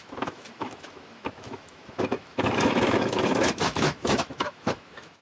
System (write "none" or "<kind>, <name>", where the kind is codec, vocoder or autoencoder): autoencoder, DAC-VAE